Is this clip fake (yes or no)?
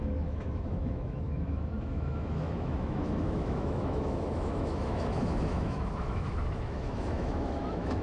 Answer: yes